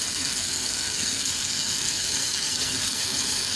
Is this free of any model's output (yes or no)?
no